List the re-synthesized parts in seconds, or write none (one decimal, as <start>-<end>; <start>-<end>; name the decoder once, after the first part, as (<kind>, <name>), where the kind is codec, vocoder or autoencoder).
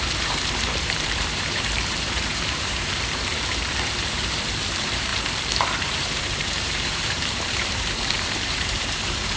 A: 0.0-5.1 (vocoder, BigVGAN v2); 5.8-9.4